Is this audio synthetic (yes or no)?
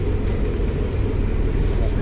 no